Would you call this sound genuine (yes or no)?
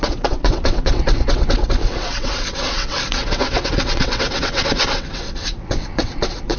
no